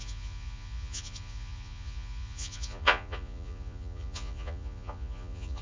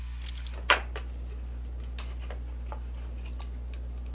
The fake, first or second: first